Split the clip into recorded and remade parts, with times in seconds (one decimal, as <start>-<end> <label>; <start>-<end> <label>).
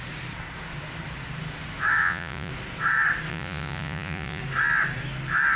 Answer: 0.0-2.0 recorded; 2.0-2.5 remade; 2.5-3.3 recorded; 3.3-4.4 remade; 4.4-5.6 recorded